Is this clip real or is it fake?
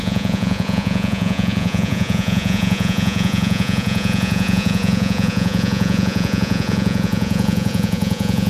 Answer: fake